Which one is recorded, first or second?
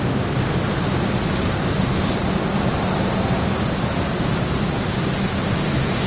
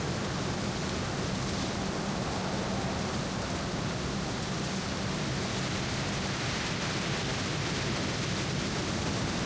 second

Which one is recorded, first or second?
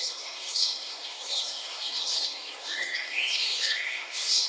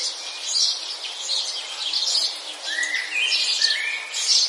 second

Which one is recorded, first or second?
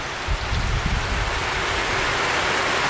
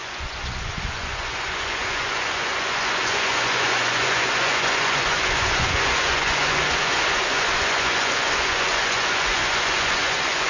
first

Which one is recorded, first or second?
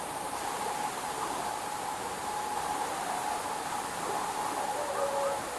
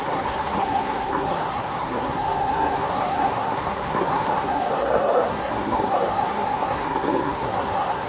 first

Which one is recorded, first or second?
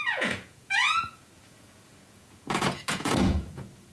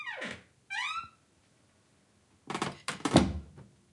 second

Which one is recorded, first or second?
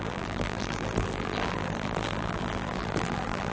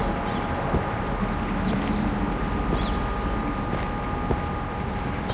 second